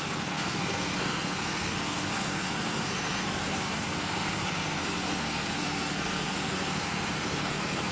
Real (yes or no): no